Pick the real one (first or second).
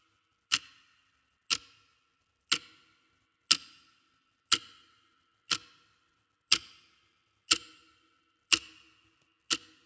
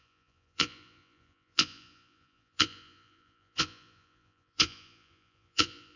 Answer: first